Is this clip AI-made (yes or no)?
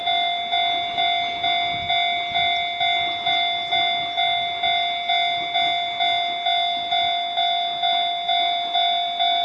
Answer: no